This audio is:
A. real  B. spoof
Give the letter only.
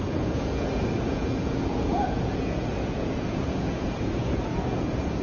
B